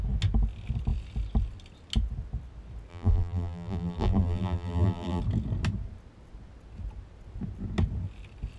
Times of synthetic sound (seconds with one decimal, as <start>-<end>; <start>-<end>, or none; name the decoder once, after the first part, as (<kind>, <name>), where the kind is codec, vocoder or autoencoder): 2.9-5.2 (vocoder, BigVGAN v2)